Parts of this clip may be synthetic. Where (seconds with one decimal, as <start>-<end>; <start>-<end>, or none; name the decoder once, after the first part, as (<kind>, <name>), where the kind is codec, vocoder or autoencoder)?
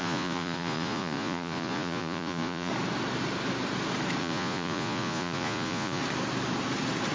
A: 0.0-2.7 (vocoder, Vocos); 4.2-6.0